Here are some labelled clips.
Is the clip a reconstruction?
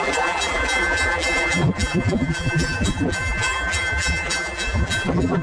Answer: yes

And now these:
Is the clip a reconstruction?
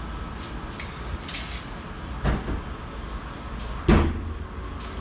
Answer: no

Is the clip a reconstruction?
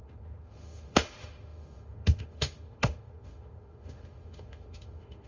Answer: yes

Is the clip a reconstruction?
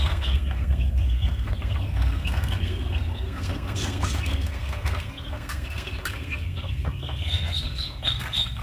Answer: yes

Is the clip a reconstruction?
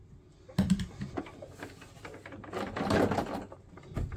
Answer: no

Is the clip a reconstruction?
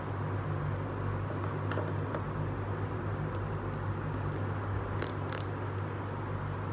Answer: no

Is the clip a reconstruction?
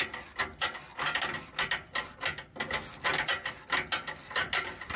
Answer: no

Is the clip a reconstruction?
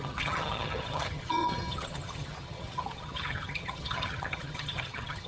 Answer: yes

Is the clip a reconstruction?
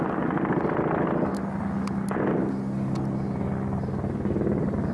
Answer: no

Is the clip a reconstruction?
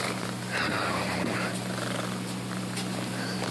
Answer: no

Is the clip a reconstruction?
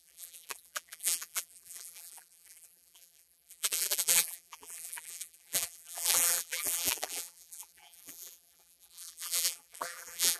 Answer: yes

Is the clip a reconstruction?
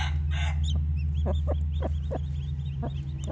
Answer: no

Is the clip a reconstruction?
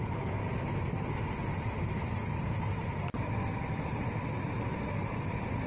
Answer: no